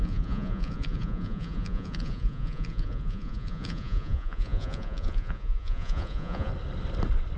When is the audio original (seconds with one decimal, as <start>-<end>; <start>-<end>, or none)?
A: 6.5-7.4